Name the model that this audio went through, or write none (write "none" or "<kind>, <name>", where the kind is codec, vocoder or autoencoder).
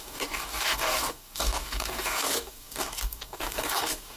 codec, DAC